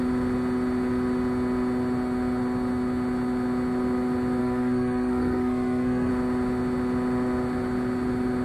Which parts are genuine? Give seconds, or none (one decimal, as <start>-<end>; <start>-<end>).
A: 0.0-4.4; 6.1-8.4